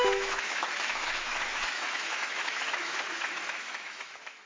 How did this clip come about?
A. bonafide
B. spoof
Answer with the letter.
B